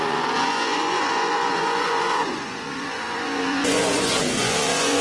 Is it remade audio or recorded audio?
remade